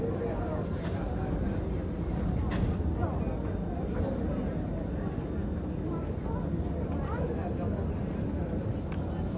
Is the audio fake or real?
real